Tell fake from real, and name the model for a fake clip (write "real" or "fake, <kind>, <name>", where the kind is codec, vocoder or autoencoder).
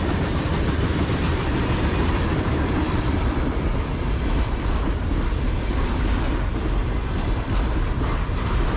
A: fake, vocoder, BigVGAN v2